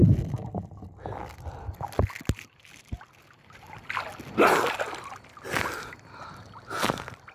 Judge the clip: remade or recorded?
recorded